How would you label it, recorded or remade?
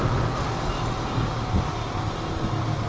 recorded